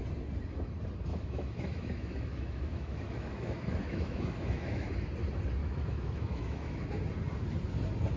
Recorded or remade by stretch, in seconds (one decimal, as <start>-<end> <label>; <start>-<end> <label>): 0.0-1.1 recorded; 1.1-4.9 remade; 4.9-5.6 recorded; 5.6-6.8 remade; 6.8-8.2 recorded